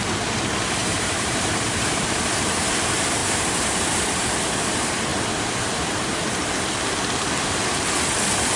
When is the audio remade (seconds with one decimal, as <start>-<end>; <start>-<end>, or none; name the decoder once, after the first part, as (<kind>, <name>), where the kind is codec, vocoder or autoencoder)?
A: 0.8-2.7 (vocoder, BigVGAN v2); 3.2-4.3

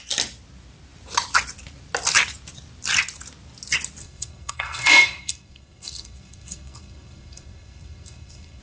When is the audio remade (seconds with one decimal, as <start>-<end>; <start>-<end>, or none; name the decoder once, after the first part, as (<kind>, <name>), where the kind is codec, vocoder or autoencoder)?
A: 4.0-8.6 (codec, SNAC)